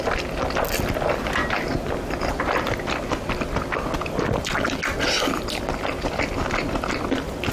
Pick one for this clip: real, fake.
real